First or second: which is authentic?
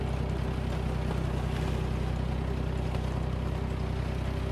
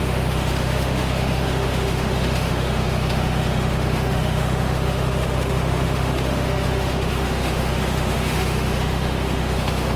first